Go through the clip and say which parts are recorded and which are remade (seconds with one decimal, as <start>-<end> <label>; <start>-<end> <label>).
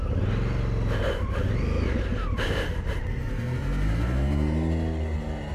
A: 0.0-5.5 recorded